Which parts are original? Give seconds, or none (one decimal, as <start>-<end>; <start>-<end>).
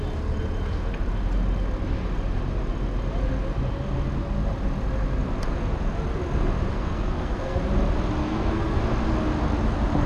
0.0-6.7; 7.6-8.2; 8.8-10.1